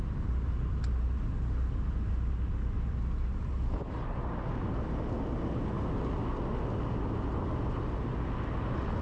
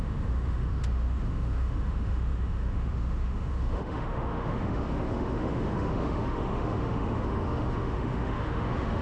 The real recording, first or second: first